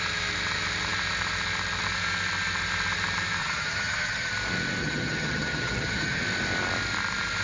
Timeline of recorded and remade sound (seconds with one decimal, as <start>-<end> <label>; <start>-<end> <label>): 0.0-3.4 recorded; 3.4-4.3 remade; 4.3-4.8 recorded; 4.8-6.2 remade; 6.2-7.4 recorded